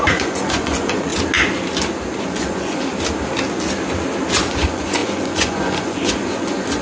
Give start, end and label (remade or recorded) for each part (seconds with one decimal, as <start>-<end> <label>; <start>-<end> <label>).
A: 0.0-1.1 remade; 1.1-2.2 recorded; 2.2-2.9 remade; 2.9-4.5 recorded; 4.5-6.8 remade